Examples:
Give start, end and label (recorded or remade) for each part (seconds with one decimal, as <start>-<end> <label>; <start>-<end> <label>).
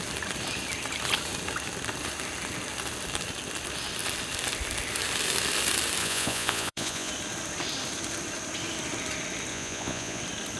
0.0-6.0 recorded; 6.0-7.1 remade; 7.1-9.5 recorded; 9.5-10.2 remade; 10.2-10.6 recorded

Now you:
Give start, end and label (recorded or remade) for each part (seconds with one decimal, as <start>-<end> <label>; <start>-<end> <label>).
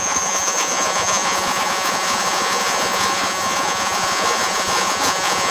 0.0-5.5 remade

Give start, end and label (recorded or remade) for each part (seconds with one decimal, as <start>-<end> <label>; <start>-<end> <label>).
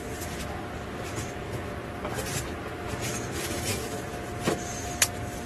0.0-5.5 recorded